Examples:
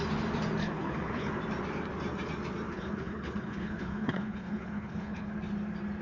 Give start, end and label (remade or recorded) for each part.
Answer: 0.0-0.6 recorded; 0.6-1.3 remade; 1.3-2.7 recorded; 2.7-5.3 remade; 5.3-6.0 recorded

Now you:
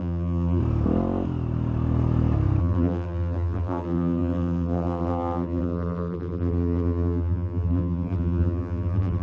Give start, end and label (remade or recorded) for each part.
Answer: 0.0-0.6 remade; 0.6-2.6 recorded; 2.6-9.2 remade

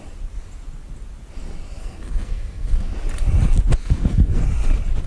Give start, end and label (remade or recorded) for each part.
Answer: 0.0-1.8 recorded; 1.8-2.9 remade; 2.9-3.8 recorded; 3.8-4.4 remade; 4.4-5.1 recorded

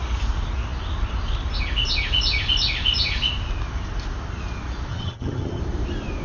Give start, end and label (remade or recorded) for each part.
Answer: 0.0-4.9 recorded; 4.9-5.6 remade; 5.6-6.2 recorded

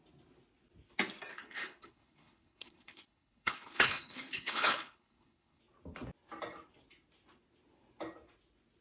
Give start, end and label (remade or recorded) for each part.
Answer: 0.0-1.3 recorded; 1.3-5.6 remade; 5.6-8.8 recorded

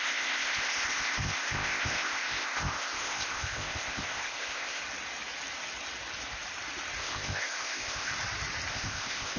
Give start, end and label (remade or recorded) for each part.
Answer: 0.0-4.8 remade; 4.8-7.0 recorded; 7.0-8.1 remade; 8.1-8.7 recorded; 8.7-9.4 remade

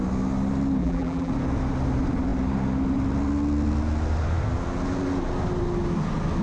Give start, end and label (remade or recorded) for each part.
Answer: 0.0-0.8 recorded; 0.8-1.3 remade; 1.3-6.4 recorded

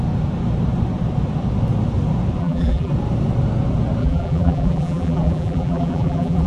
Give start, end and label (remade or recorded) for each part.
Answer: 0.0-2.4 recorded; 2.4-2.9 remade; 2.9-4.0 recorded; 4.0-6.5 remade